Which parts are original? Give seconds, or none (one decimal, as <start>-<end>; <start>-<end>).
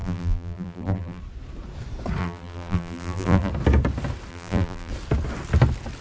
1.2-2.2; 3.5-4.3; 4.9-6.0